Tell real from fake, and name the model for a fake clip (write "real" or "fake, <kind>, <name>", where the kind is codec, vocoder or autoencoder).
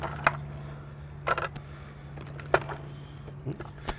real